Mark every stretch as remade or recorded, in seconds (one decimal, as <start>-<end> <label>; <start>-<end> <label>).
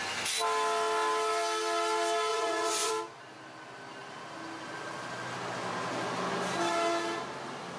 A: 0.0-2.3 recorded; 2.3-2.9 remade; 2.9-7.8 recorded